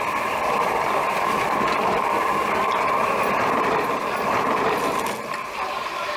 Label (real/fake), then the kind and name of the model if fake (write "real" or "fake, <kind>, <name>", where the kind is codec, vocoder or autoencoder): real